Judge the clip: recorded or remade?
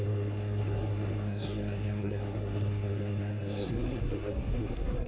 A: remade